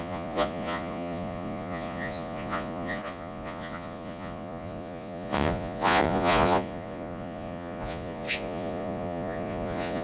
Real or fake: fake